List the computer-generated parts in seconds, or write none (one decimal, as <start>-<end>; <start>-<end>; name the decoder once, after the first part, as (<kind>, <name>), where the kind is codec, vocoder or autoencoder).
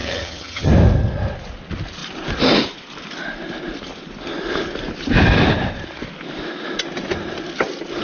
0.0-0.7 (vocoder, HiFi-GAN)